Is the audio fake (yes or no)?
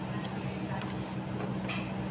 no